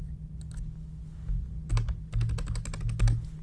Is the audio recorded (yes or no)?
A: yes